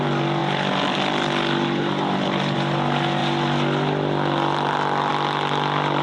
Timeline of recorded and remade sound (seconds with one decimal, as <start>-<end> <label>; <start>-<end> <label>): 0.0-6.0 recorded